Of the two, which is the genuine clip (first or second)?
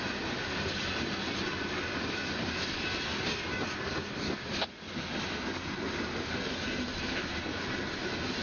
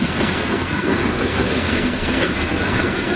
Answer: first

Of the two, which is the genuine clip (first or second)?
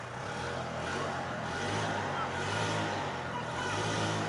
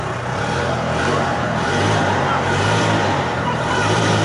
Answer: first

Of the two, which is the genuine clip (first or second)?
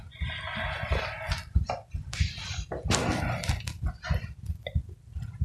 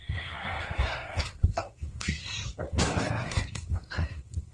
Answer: first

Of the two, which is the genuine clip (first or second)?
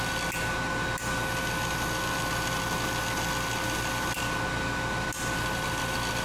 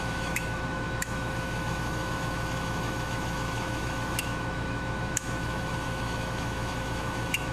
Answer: first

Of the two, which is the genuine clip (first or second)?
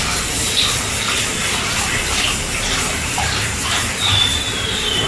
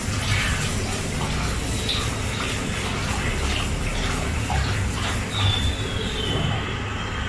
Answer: second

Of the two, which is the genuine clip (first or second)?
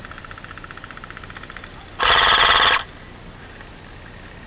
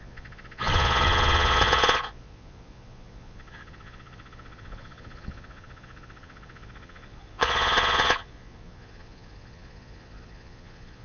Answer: first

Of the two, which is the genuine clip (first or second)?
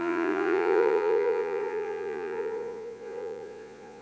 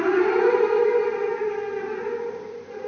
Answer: second